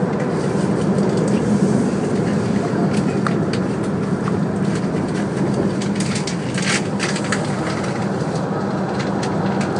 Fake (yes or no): no